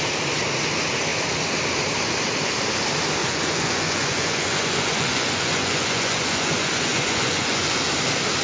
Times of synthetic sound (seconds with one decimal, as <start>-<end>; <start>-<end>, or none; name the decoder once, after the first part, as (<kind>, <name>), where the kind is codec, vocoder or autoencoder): 3.2-7.8 (vocoder, Vocos)